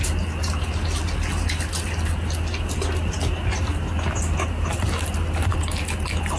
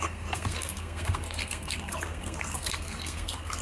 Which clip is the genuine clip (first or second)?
first